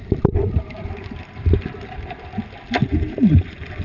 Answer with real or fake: real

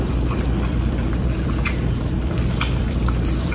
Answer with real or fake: fake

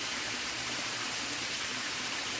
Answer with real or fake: fake